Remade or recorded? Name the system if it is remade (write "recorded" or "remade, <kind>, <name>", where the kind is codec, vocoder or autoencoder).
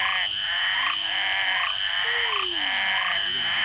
recorded